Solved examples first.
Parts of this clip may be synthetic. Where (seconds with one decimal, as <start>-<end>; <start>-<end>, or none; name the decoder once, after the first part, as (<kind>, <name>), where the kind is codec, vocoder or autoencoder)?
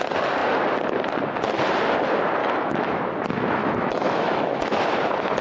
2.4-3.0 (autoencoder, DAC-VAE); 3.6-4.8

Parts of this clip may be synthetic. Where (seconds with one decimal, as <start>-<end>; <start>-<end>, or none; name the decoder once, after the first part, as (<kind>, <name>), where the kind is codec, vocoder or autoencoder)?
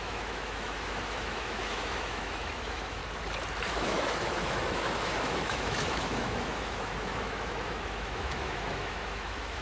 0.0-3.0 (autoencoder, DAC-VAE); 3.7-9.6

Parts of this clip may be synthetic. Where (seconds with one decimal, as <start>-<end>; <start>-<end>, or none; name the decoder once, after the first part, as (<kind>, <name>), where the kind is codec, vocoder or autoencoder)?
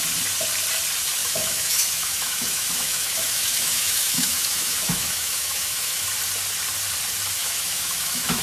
1.2-6.0 (autoencoder, DAC-VAE); 7.4-8.4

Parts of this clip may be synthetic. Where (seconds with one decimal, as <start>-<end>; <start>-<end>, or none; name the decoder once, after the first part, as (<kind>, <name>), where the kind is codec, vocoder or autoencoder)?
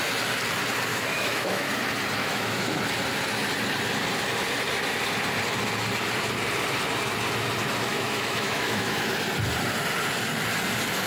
0.9-1.7 (autoencoder, DAC-VAE); 2.2-2.8; 7.9-9.1